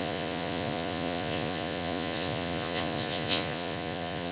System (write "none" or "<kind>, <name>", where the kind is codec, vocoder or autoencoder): vocoder, Vocos